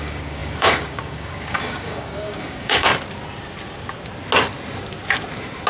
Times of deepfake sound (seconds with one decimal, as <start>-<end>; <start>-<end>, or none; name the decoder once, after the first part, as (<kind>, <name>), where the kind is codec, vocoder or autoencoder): 0.0-2.9 (codec, DAC)